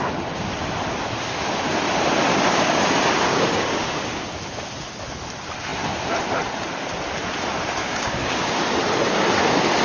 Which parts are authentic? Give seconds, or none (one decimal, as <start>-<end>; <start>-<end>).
0.0-2.3; 2.8-3.3; 4.2-7.8; 8.6-9.8